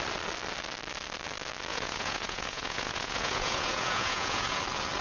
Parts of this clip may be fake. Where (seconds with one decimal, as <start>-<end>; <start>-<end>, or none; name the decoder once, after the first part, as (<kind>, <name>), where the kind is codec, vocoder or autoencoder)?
1.7-4.6 (vocoder, Vocos)